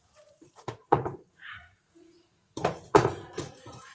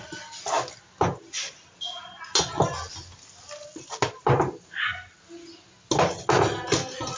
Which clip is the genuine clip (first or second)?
second